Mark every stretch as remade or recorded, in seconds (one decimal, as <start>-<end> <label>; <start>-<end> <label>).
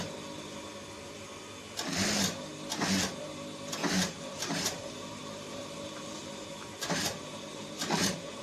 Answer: 0.0-3.8 recorded; 3.8-8.4 remade